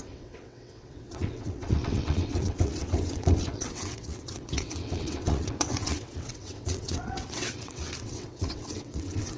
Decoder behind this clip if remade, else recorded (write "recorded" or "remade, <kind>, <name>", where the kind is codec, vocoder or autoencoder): remade, vocoder, WaveNeXt